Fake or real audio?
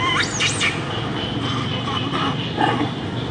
real